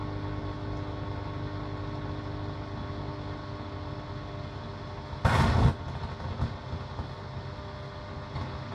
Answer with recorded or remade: recorded